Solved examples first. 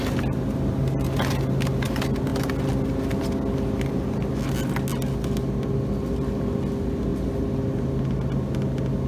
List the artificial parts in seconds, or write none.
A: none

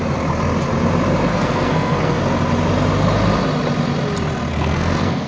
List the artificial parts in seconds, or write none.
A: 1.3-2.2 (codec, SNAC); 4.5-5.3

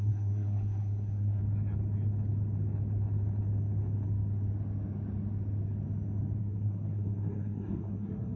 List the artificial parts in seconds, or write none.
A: 0.0-1.4 (codec, SNAC); 6.4-8.4

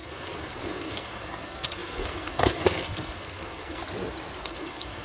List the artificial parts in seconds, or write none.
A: 0.0-3.8 (codec, SNAC); 4.4-5.0

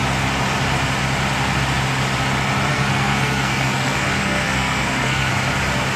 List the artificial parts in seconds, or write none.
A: 2.7-5.3 (codec, SNAC)

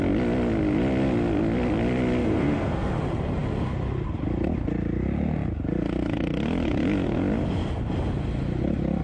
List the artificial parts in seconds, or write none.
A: 2.2-2.9 (codec, SNAC)

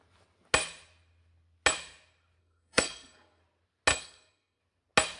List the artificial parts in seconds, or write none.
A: 2.4-3.4 (codec, SNAC); 3.9-4.6